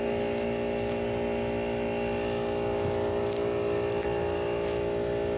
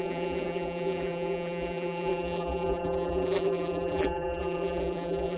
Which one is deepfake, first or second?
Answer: second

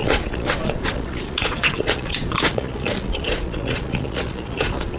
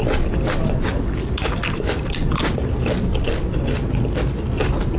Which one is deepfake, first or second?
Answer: first